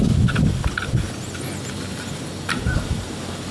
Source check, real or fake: real